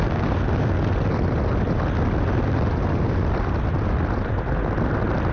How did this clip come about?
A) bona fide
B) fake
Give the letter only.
A